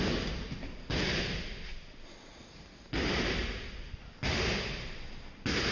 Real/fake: real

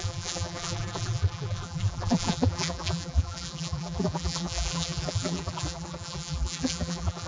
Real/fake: fake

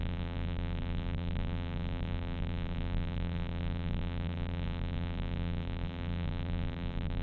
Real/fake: fake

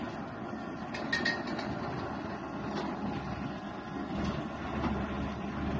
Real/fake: real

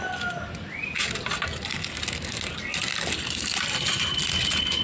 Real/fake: real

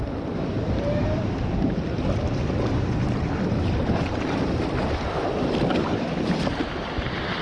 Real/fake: fake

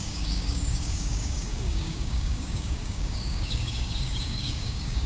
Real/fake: fake